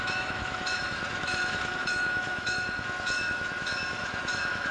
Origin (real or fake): fake